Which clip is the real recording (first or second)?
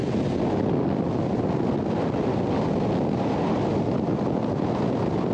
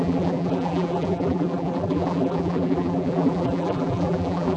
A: first